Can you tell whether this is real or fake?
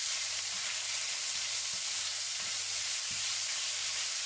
fake